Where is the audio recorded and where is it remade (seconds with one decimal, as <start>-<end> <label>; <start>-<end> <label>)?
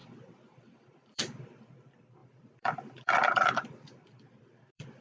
0.0-1.2 remade; 1.2-2.2 recorded; 2.2-5.0 remade